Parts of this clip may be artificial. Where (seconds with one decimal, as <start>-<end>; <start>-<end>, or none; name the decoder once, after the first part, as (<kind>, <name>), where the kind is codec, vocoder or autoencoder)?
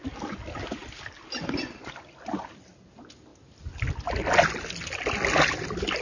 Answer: none